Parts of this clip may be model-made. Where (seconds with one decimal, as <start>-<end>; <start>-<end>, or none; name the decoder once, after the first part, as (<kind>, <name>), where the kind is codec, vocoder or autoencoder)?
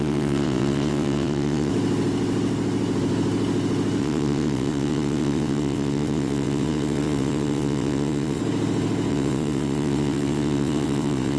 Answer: 0.0-1.7 (vocoder, WaveNeXt); 4.0-8.4; 9.1-11.4